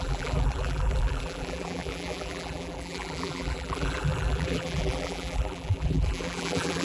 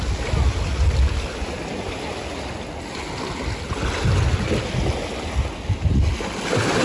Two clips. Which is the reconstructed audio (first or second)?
first